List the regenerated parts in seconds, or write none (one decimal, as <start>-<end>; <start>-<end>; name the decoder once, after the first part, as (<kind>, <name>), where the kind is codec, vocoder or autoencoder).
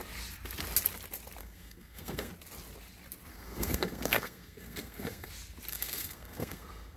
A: 1.4-2.3 (codec, SNAC); 3.3-5.3; 5.7-7.0